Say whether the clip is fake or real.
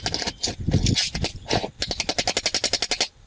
real